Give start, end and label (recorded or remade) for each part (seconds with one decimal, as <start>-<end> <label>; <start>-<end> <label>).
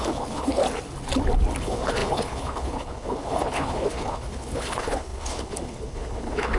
0.0-0.6 remade; 0.6-1.6 recorded; 1.6-6.6 remade